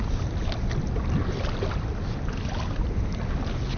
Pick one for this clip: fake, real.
real